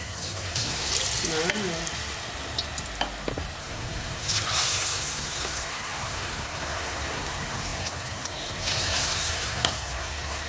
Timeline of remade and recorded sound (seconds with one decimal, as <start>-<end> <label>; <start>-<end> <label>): 0.0-0.9 remade; 0.9-3.6 recorded; 3.6-10.5 remade